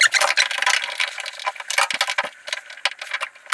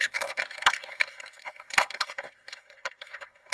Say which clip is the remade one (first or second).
second